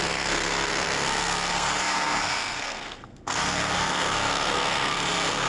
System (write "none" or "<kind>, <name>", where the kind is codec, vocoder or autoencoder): codec, SNAC